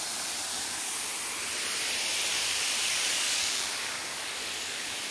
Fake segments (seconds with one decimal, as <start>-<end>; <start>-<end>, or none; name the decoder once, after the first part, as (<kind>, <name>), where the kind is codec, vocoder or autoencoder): 0.5-1.1 (codec, DAC); 2.3-5.1